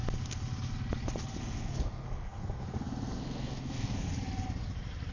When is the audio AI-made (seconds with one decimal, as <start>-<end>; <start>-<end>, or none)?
1.4-4.1